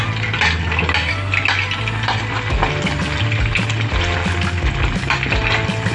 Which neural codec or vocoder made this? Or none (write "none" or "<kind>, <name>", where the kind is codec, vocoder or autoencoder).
none